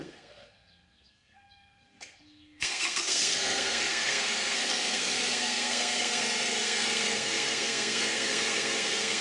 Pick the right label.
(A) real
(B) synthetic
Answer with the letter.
B